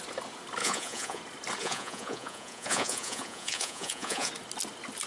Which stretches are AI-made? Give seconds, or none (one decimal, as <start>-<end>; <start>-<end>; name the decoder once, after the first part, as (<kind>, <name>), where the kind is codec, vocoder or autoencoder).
0.6-1.2 (vocoder, Vocos); 1.6-4.3